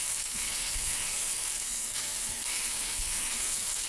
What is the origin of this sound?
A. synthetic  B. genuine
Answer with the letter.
A